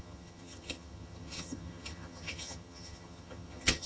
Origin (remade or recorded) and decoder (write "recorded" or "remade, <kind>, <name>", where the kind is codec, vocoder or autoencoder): remade, vocoder, HiFi-GAN